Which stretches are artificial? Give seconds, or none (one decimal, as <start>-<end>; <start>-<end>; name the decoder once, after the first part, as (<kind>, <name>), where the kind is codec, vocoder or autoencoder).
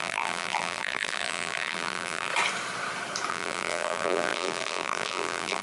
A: 0.0-2.3 (vocoder, BigVGAN v2); 3.3-5.6